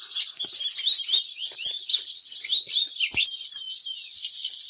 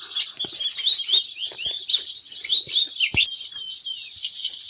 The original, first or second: second